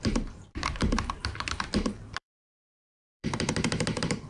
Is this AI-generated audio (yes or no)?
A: yes